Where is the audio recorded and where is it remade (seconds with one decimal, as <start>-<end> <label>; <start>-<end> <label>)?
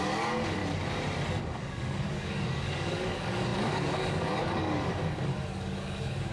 0.0-0.6 remade; 0.6-1.4 recorded; 1.4-6.3 remade